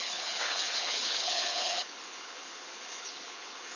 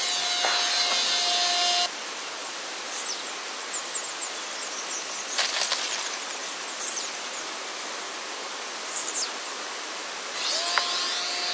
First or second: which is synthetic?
first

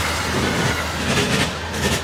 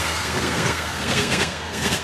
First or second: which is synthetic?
second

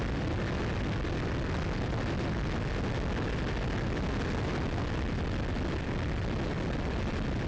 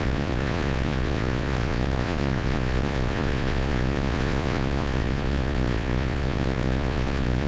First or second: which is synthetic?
second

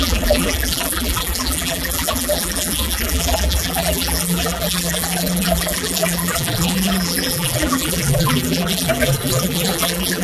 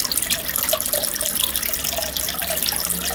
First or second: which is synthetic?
first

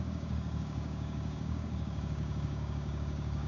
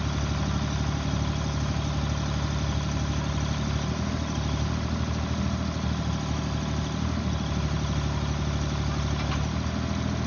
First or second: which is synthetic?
first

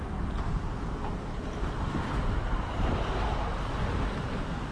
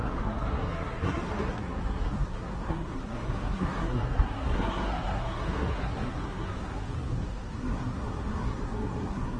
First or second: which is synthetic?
second